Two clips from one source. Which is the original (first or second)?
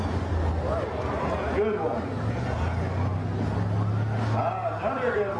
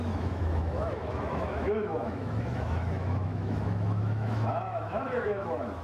first